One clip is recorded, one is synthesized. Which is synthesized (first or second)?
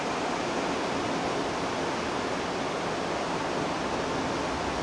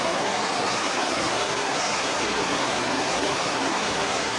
second